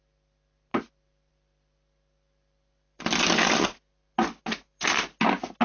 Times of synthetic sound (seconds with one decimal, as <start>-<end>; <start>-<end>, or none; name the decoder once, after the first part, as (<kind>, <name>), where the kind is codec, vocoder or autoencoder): none